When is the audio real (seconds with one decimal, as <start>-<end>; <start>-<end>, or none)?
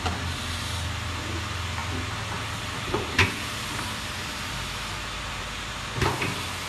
0.0-6.7